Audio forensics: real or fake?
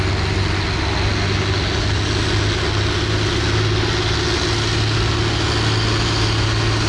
real